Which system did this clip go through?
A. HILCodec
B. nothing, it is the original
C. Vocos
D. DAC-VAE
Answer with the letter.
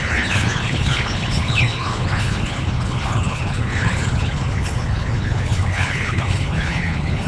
A